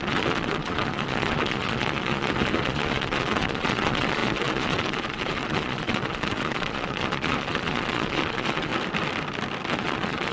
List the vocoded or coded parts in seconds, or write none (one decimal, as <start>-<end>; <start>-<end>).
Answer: 0.0-8.7; 9.7-10.3